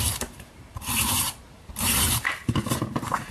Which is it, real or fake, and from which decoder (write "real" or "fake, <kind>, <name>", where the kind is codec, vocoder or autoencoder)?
fake, vocoder, BigVGAN v2